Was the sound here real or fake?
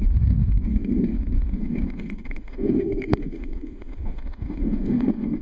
fake